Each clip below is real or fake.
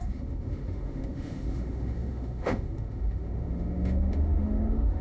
fake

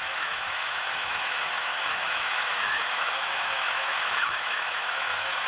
fake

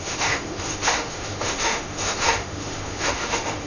fake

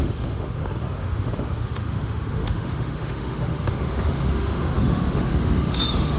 fake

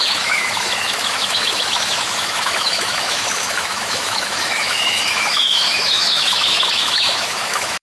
fake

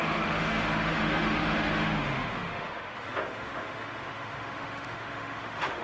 fake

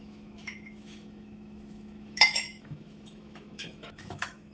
fake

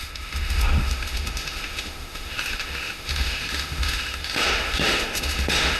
fake